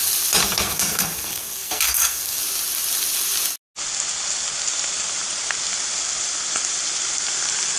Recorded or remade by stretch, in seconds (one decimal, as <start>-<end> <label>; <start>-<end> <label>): 0.0-0.4 recorded; 0.4-2.4 remade; 2.4-7.8 recorded